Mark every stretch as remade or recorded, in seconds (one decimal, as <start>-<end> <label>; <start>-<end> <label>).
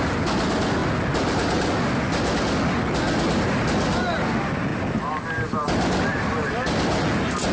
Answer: 0.0-7.5 recorded